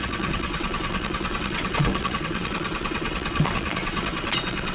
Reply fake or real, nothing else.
fake